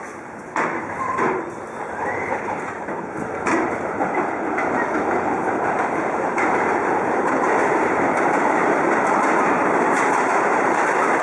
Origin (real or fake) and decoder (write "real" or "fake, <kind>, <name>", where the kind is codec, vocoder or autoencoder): fake, vocoder, BigVGAN v2